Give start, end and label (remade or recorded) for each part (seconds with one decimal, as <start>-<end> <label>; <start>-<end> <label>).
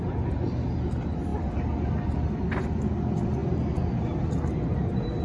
0.0-5.2 recorded